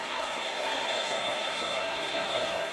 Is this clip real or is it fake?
fake